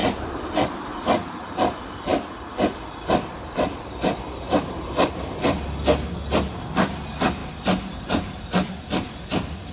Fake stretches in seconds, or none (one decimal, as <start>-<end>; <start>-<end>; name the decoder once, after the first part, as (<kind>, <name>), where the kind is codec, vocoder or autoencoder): 0.0-0.9 (vocoder, BigVGAN v2); 7.4-8.7